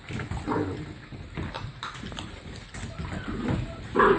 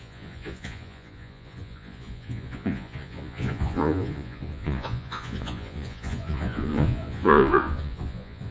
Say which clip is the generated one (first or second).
second